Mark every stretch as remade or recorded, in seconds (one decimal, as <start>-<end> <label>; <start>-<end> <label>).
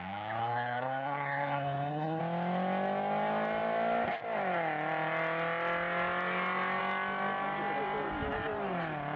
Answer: 0.0-0.4 recorded; 0.4-2.2 remade; 2.2-9.2 recorded